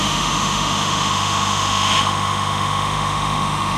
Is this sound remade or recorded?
remade